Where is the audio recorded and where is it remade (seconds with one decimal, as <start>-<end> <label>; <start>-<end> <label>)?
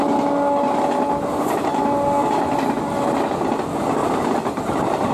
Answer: 0.0-2.2 recorded; 2.2-2.8 remade; 2.8-4.0 recorded; 4.0-5.1 remade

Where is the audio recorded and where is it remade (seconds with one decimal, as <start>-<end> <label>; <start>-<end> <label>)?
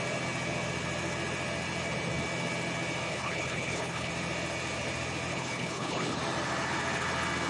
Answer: 0.0-3.1 recorded; 3.1-4.1 remade; 4.1-5.3 recorded; 5.3-6.2 remade; 6.2-7.5 recorded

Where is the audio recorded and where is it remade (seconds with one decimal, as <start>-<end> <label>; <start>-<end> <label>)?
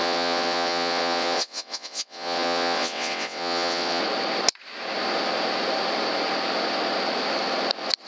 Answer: 0.0-4.0 remade; 4.0-8.1 recorded